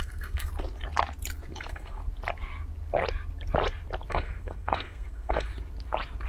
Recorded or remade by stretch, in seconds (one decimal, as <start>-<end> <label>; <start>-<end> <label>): 0.0-0.5 remade; 0.5-1.6 recorded; 1.6-2.0 remade; 2.0-4.1 recorded; 4.1-5.5 remade; 5.5-6.3 recorded